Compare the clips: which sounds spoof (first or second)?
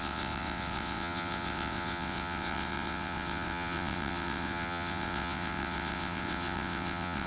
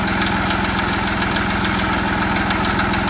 first